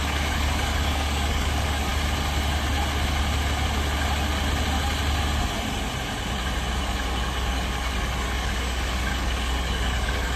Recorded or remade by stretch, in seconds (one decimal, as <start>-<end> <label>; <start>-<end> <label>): 0.0-1.9 remade; 1.9-6.8 recorded; 6.8-10.4 remade